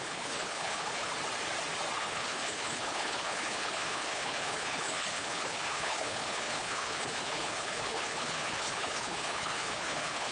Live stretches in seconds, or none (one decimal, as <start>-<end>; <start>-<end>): 1.1-2.0